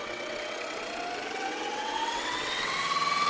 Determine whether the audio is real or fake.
fake